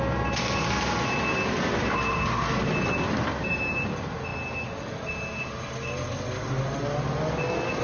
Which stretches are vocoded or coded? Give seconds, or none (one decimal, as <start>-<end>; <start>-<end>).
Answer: none